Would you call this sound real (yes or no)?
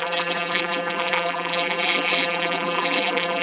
no